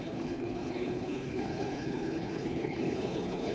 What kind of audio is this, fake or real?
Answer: fake